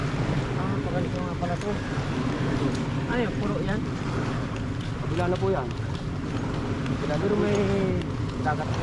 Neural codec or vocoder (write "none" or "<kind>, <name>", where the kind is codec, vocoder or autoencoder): none